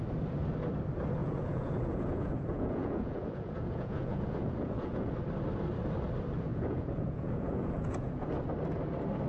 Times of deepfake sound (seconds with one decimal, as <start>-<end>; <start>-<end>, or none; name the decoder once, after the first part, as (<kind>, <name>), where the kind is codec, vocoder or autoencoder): 1.2-5.1 (vocoder, Vocos); 6.5-8.3